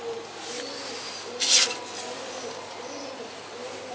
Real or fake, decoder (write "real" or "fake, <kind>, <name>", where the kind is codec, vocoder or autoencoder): real